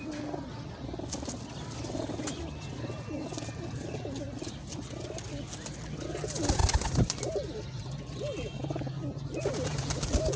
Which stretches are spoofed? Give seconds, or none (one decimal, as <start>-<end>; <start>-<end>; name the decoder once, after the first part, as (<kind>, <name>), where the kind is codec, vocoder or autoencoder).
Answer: none